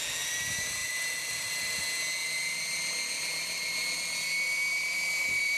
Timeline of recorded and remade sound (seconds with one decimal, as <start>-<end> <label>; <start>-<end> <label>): 0.0-0.8 recorded; 0.8-1.8 remade; 1.8-2.2 recorded; 2.2-5.6 remade